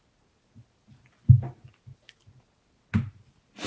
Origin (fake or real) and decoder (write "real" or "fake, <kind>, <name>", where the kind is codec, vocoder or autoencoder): real